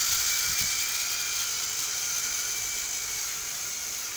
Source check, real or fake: real